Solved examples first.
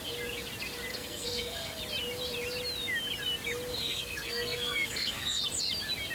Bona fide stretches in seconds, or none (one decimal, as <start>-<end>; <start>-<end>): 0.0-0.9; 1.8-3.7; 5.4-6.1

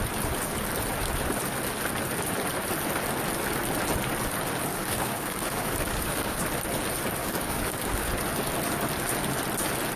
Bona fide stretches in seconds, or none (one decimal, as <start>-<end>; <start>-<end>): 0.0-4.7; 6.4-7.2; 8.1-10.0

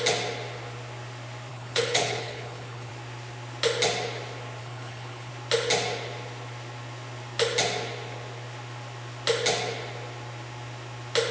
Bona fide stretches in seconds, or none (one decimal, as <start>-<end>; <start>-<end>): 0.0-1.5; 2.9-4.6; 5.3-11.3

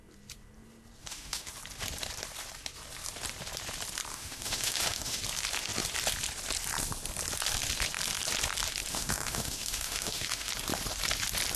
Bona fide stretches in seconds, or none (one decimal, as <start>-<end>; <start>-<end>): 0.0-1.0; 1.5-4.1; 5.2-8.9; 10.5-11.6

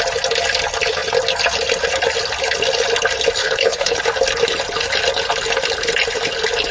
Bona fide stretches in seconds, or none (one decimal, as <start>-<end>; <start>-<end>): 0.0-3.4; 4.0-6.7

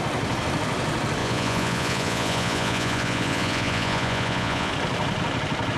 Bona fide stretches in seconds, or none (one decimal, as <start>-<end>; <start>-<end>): 0.0-1.2; 4.7-5.8

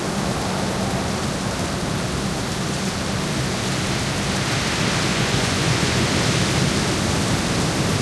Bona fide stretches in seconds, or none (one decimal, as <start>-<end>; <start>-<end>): 0.0-5.1; 6.1-8.0